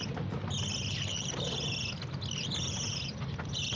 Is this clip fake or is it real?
real